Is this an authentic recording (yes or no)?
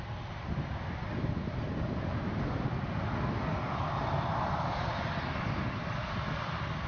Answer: yes